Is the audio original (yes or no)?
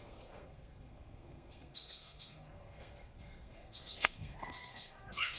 no